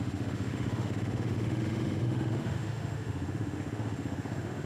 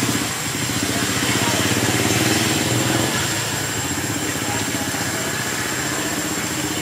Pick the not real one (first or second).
first